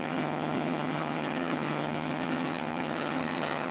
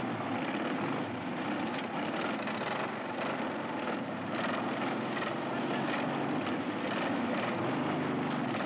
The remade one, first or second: first